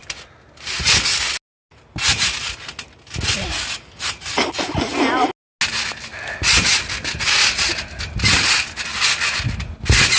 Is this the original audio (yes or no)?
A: yes